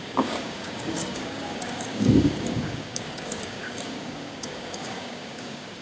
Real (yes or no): no